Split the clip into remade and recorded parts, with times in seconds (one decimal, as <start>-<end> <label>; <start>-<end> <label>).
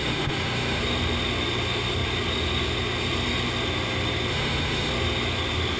0.0-0.8 remade; 0.8-4.3 recorded; 4.3-4.9 remade; 4.9-5.8 recorded